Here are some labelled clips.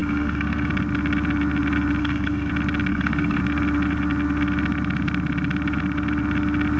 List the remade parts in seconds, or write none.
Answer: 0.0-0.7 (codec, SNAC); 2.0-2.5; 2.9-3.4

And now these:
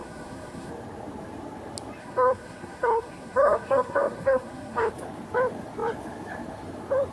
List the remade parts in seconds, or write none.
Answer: 0.0-0.7 (codec, SNAC); 2.0-4.9

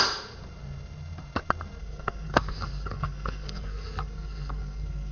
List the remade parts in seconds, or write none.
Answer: 1.8-5.1 (codec, SNAC)

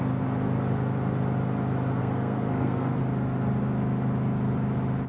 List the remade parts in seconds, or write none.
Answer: 2.0-3.0 (codec, SNAC)